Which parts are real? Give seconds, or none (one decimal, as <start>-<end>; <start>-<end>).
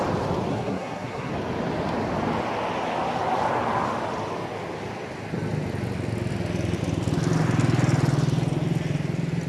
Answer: 0.0-0.5; 1.3-9.5